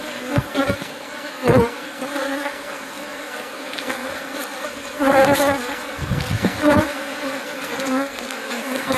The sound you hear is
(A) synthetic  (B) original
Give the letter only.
A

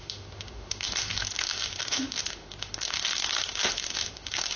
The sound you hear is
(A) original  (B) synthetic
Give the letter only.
B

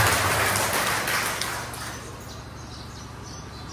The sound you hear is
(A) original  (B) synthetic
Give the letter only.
A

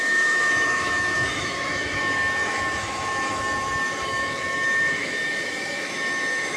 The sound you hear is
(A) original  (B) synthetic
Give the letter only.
B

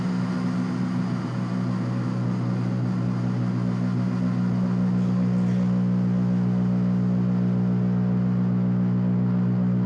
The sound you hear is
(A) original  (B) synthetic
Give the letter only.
A